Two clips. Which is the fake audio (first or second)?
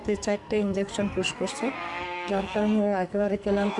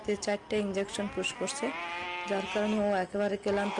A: first